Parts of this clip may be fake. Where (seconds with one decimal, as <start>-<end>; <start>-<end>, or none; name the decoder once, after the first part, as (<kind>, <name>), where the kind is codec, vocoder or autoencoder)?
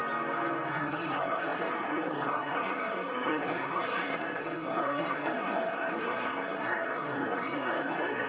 0.7-8.3 (codec, SNAC)